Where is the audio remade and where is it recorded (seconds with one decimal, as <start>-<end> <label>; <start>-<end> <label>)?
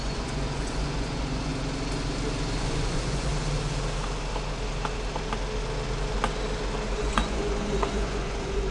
0.0-1.5 remade; 1.5-2.6 recorded; 2.6-3.3 remade; 3.3-7.0 recorded; 7.0-8.7 remade